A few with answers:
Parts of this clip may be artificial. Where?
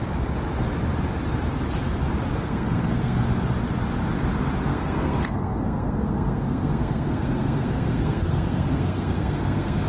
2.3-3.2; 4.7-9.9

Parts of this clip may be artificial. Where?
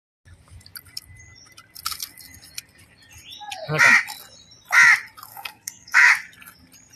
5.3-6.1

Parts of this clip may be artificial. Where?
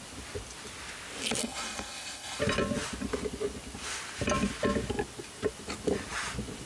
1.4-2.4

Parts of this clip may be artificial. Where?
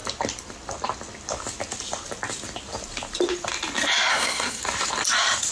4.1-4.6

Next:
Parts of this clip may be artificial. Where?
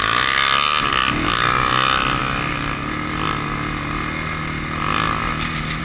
none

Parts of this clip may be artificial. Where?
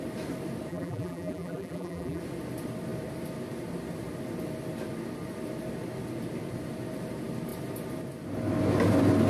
0.7-2.2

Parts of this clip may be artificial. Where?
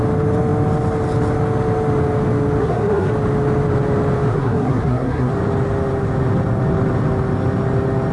2.6-3.1; 4.3-5.3